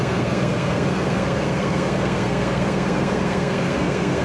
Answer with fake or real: fake